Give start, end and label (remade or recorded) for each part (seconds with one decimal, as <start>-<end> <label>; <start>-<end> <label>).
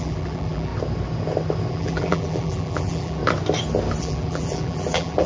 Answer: 0.0-0.7 remade; 0.7-1.7 recorded; 1.7-3.2 remade; 3.2-4.0 recorded; 4.0-5.3 remade